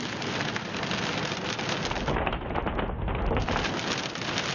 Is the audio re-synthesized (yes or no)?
no